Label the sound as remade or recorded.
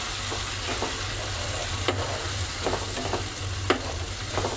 recorded